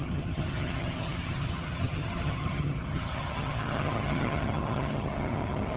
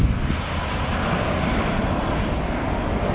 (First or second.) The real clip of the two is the second